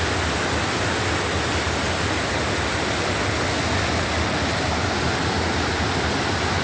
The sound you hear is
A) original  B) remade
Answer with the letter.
A